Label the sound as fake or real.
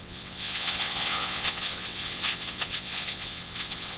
fake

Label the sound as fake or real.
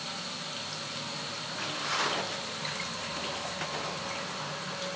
real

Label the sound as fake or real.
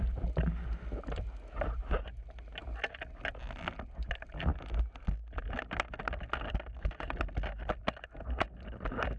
real